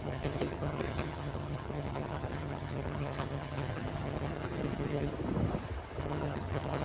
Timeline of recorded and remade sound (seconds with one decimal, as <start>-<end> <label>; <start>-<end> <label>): 0.0-5.1 remade; 5.1-6.0 recorded; 6.0-6.8 remade